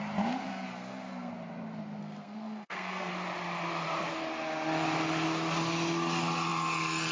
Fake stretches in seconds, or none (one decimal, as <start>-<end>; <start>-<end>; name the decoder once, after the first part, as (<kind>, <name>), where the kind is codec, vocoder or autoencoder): 0.5-1.3 (codec, SNAC); 2.0-3.1